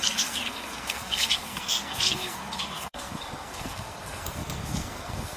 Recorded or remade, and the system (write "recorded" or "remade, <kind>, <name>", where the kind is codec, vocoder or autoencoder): remade, codec, SNAC